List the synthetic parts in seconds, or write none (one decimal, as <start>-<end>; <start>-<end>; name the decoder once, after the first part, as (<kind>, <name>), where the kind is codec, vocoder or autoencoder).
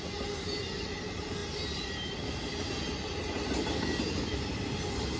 none